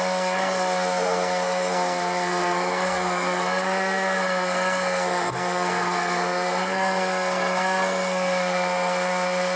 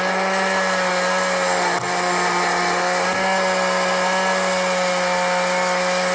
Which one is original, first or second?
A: second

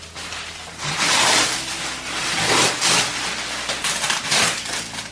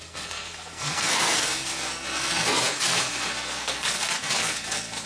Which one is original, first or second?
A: first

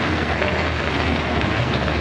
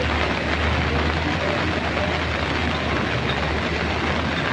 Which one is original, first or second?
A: second